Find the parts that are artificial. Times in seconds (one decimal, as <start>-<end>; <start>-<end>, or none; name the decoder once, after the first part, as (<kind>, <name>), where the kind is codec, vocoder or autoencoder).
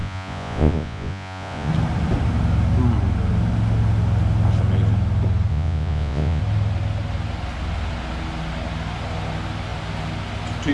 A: 0.0-1.7 (vocoder, Vocos); 5.5-6.4